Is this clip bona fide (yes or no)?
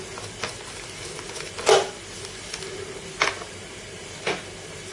yes